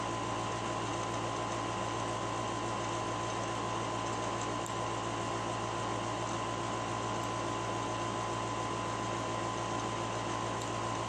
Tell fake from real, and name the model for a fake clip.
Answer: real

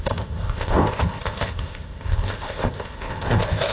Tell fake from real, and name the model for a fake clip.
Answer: fake, codec, ZipCodec